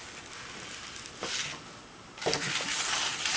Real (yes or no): yes